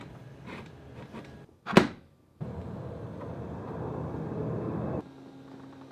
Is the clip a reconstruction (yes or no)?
no